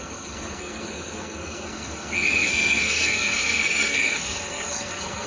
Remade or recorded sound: remade